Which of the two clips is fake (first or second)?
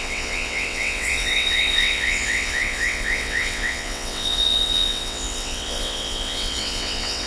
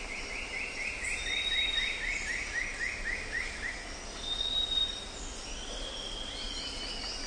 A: first